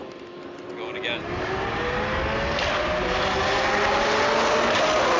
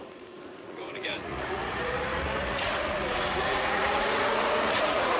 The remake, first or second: second